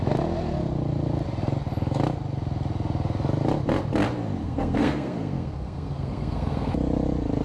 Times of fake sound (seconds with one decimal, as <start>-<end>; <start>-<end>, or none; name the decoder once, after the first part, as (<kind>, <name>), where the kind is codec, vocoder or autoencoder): 4.4-6.7 (codec, SNAC)